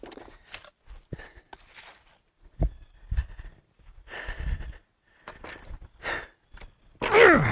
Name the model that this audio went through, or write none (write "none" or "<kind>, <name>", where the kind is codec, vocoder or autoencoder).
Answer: none